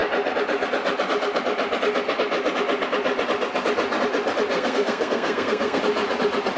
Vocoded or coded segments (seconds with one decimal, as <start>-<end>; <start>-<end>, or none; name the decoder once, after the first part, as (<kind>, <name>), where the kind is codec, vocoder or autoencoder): 4.5-5.8 (codec, SNAC)